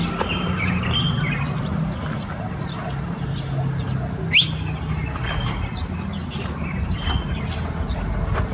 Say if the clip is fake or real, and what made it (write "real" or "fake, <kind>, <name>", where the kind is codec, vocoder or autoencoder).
real